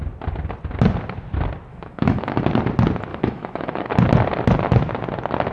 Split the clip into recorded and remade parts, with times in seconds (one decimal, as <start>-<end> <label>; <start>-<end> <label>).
0.0-1.7 recorded; 1.7-2.4 remade; 2.4-3.1 recorded; 3.1-3.9 remade; 3.9-5.5 recorded